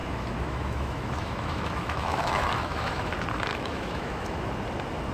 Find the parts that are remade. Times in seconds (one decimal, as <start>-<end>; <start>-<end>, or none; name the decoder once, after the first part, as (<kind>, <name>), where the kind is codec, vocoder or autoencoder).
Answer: 0.0-3.1 (autoencoder, DAC-VAE); 3.5-4.4

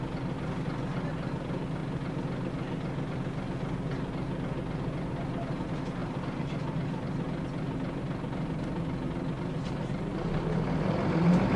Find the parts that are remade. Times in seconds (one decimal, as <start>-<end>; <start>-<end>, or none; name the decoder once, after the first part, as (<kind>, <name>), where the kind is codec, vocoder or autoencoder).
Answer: 6.0-7.4 (vocoder, BigVGAN v2); 9.6-11.0